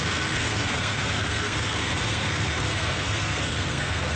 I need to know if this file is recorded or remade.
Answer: remade